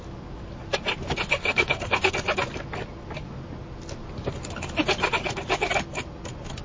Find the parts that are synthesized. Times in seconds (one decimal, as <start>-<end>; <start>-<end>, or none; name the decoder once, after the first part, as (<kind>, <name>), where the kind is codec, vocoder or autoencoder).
1.4-2.1 (codec, SNAC)